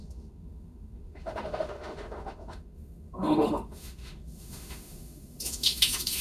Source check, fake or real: fake